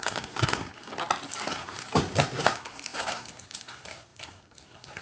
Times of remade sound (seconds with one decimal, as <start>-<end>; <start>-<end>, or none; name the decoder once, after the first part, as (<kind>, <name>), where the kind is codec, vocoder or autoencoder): 0.0-0.9 (codec, SNAC); 1.5-5.0